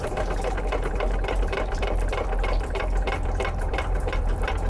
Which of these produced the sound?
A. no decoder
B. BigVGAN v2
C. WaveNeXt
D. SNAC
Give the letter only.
B